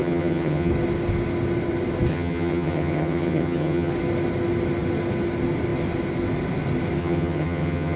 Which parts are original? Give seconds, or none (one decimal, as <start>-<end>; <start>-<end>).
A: 0.7-2.1; 3.9-7.0